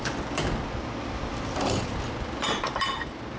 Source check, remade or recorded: recorded